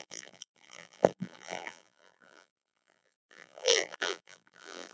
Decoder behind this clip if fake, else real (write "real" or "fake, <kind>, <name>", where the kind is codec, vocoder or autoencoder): fake, vocoder, BigVGAN v2